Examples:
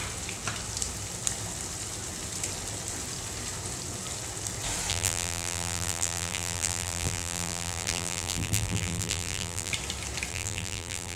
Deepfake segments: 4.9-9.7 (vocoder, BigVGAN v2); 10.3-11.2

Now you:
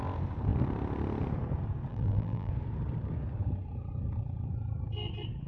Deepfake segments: 1.9-2.5 (vocoder, BigVGAN v2)

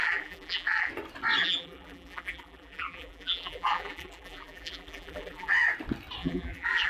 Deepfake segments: 0.0-0.9 (vocoder, BigVGAN v2); 1.4-5.5; 6.2-6.9

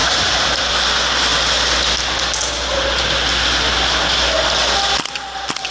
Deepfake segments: 0.0-0.7 (vocoder, BigVGAN v2)

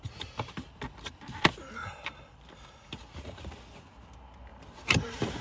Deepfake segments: 1.8-3.5 (vocoder, BigVGAN v2); 4.5-5.4